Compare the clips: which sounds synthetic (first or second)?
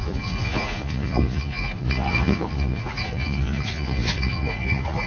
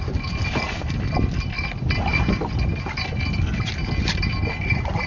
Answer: first